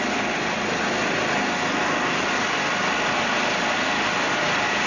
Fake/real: real